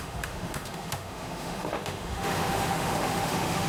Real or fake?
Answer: fake